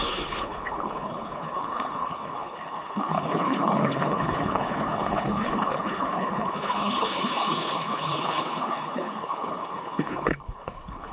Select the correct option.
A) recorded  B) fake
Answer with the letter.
B